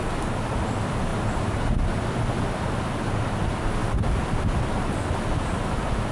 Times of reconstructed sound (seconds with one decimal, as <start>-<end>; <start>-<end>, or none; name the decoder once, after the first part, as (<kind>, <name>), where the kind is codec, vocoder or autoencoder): none